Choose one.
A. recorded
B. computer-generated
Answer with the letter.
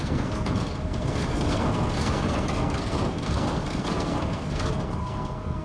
B